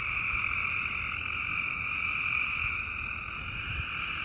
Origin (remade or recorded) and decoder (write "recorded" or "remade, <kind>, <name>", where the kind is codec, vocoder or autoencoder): recorded